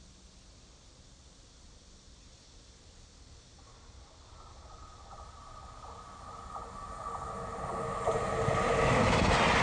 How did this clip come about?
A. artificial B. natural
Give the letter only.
B